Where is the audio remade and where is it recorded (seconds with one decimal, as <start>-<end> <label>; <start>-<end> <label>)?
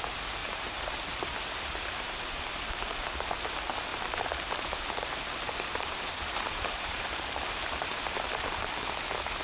0.0-0.4 recorded; 0.4-2.4 remade; 2.4-3.9 recorded; 3.9-8.7 remade; 8.7-9.4 recorded